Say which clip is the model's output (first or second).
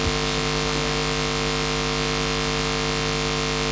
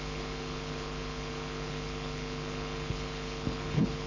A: second